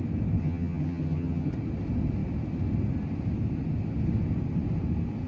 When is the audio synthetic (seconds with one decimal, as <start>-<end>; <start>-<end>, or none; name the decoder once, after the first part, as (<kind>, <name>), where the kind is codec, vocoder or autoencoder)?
0.4-1.5 (vocoder, HiFi-GAN)